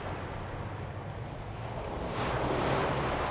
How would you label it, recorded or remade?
recorded